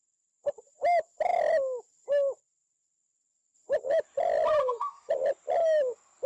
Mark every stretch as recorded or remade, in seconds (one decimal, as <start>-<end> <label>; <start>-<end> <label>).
0.0-4.6 recorded; 4.6-5.1 remade; 5.1-6.3 recorded